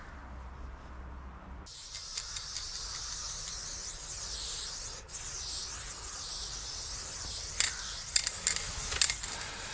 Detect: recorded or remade recorded